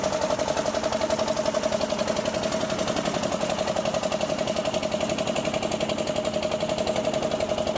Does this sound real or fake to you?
real